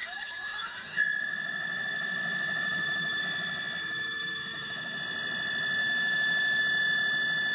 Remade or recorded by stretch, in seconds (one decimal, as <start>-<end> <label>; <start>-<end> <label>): 0.0-3.2 remade; 3.2-3.8 recorded; 3.8-5.0 remade; 5.0-5.8 recorded; 5.8-6.6 remade; 6.6-7.5 recorded